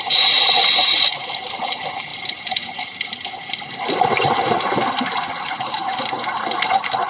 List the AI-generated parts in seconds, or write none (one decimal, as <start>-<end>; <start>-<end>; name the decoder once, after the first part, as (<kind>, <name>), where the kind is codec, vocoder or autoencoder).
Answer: none